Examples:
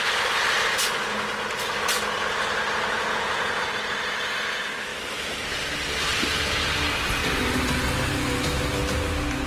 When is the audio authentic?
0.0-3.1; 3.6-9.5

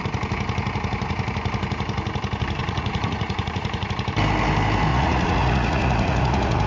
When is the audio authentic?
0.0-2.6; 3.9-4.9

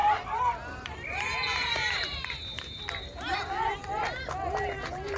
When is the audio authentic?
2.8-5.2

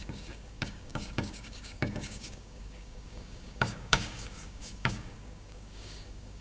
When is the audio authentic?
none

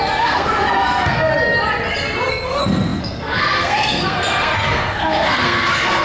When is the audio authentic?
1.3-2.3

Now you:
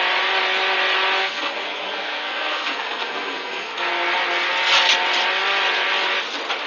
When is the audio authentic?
0.0-1.2; 3.9-6.7

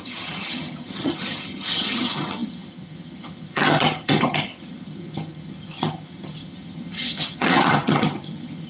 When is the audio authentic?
none